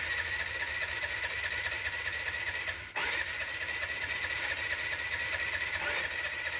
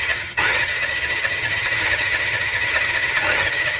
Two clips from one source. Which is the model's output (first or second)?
second